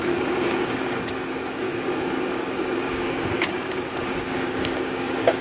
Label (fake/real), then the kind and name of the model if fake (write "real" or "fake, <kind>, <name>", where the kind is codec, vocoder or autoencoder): fake, codec, DAC